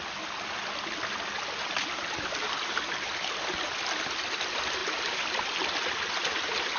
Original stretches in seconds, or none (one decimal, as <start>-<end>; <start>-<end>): 0.0-4.8; 5.4-6.8